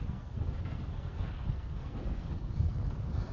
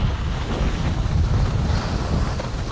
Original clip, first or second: second